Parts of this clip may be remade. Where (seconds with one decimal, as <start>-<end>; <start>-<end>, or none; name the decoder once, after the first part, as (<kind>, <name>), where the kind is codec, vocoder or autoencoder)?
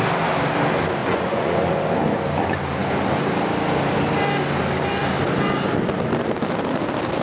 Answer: 1.0-1.8 (vocoder, Vocos)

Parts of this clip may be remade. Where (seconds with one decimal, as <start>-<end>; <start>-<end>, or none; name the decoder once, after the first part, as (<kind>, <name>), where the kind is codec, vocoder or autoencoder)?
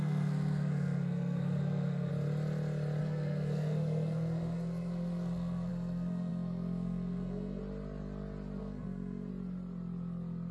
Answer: 0.0-2.1 (codec, SNAC); 3.0-7.6; 8.6-9.3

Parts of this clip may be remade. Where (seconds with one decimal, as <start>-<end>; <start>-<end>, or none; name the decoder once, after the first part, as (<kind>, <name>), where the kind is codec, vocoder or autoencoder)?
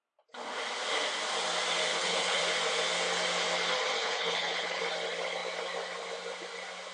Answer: 1.9-2.4 (codec, HILCodec); 4.0-4.8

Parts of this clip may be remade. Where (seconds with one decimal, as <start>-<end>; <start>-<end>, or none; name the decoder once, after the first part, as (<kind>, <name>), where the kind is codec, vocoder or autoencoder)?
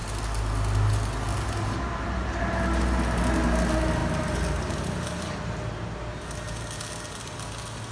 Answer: none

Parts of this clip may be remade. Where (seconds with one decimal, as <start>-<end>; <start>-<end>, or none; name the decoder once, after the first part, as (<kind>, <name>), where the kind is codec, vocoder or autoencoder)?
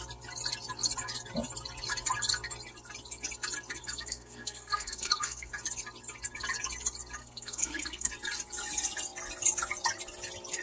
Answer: 3.8-5.5 (codec, SNAC); 7.2-8.1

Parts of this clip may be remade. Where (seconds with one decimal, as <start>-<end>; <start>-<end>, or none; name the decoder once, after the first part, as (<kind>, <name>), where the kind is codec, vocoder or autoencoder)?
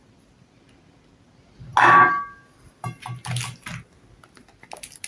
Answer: none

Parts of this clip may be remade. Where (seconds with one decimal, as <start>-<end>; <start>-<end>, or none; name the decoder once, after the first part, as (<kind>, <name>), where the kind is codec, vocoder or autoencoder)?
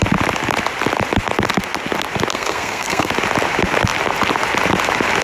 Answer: 2.3-3.1 (codec, SNAC)